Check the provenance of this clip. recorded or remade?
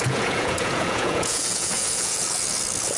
remade